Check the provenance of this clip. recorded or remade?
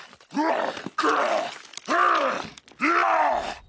recorded